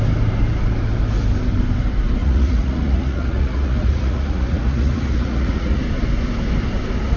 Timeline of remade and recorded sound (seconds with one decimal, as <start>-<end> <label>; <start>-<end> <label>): 0.0-2.2 recorded; 2.2-5.8 remade; 5.8-7.2 recorded